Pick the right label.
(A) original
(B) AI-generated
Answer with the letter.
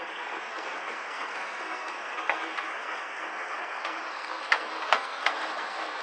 B